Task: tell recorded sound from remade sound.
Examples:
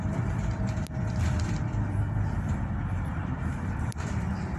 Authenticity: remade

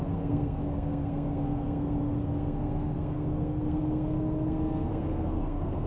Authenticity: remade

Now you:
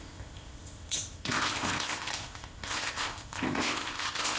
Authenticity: remade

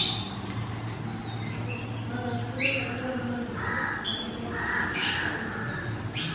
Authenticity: recorded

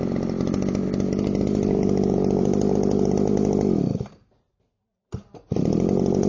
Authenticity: recorded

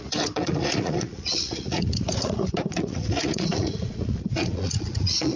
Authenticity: remade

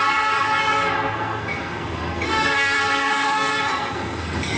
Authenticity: remade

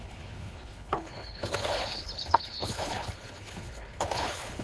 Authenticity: remade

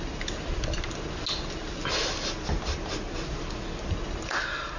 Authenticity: recorded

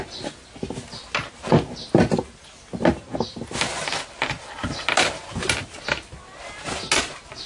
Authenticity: recorded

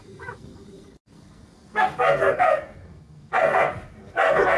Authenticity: remade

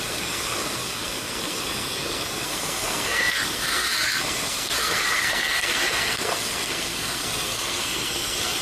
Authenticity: remade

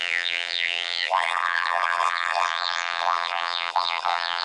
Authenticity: remade